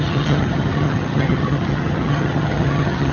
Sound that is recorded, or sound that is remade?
remade